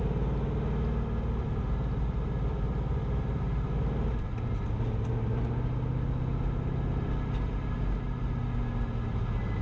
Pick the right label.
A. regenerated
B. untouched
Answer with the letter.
B